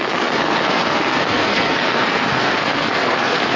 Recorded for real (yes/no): no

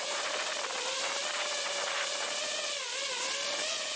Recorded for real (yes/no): yes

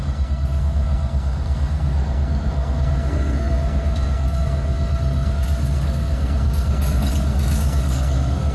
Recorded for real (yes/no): no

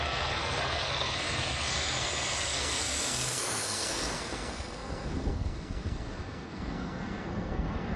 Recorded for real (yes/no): no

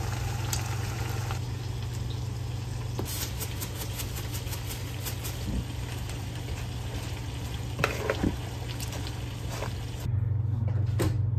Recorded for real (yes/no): yes